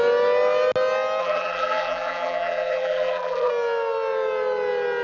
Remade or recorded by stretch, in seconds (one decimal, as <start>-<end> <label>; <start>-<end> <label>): 0.0-1.2 recorded; 1.2-3.5 remade; 3.5-5.0 recorded

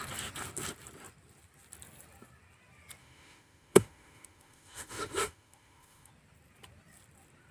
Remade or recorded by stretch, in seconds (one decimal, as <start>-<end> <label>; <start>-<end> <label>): 0.0-3.0 recorded; 3.0-6.1 remade; 6.1-7.5 recorded